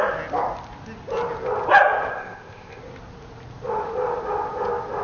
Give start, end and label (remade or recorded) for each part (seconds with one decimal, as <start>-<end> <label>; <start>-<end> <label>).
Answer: 0.0-2.1 recorded; 2.1-2.8 remade; 2.8-5.0 recorded